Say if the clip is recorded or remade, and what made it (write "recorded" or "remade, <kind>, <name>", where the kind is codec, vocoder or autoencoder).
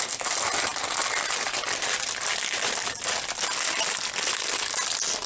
recorded